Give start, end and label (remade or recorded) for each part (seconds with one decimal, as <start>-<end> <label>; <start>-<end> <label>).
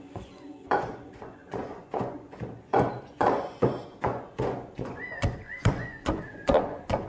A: 0.0-7.1 remade